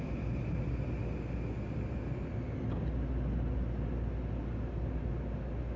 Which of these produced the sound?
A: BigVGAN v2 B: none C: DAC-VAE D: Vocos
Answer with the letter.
B